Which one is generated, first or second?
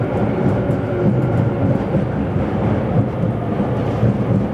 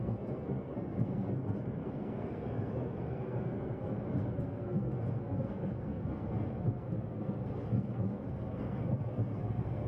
second